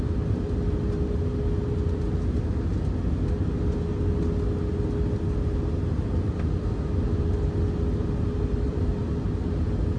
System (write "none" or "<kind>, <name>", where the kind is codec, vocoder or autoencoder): none